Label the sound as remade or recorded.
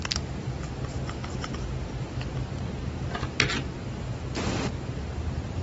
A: recorded